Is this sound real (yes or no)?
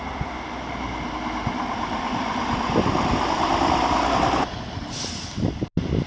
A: yes